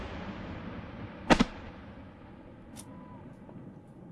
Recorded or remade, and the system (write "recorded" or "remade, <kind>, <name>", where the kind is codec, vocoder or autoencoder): recorded